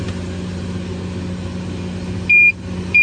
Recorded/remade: recorded